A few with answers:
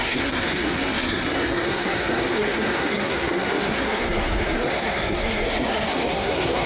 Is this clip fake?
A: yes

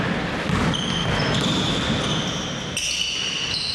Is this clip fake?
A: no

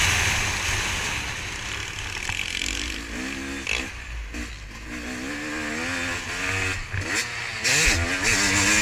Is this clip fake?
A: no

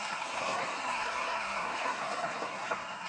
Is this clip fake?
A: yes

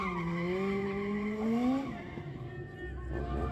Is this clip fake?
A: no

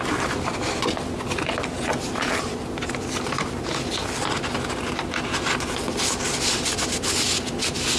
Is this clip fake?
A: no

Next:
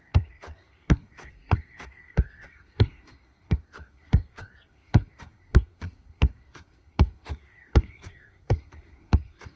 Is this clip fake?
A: yes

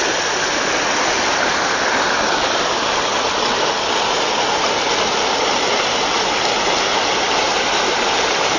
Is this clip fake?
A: no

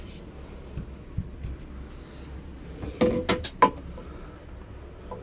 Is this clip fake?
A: no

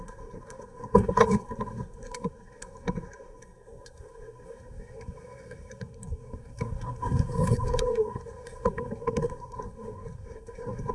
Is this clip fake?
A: yes